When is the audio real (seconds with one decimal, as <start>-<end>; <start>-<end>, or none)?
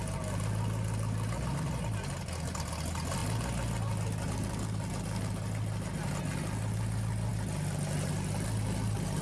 0.0-9.2